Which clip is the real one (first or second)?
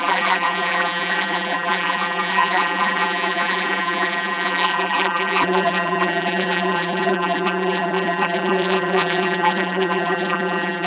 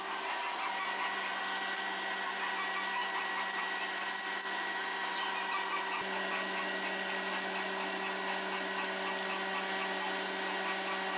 second